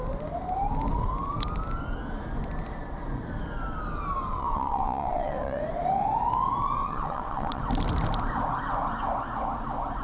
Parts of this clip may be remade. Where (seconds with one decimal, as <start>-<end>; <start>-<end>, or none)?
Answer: 4.3-5.6; 6.8-7.6